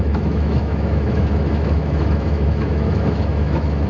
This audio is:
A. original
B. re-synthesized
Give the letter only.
B